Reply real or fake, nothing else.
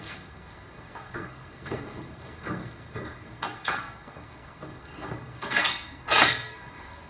fake